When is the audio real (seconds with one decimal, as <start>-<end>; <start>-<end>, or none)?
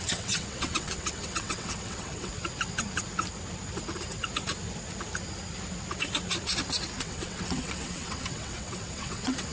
2.3-7.0